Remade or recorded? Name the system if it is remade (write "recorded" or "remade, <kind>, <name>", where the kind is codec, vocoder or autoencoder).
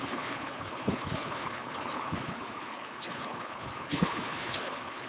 remade, codec, HILCodec